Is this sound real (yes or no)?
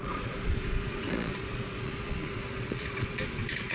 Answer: no